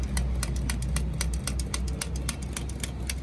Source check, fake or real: real